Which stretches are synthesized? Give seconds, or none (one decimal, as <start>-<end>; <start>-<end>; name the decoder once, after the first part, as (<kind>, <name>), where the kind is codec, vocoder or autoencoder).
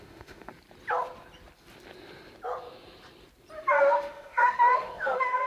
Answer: 0.0-0.5 (autoencoder, DAC-VAE); 3.8-5.5